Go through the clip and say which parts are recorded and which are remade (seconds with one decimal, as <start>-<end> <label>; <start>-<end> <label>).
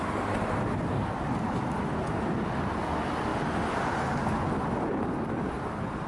0.0-6.1 recorded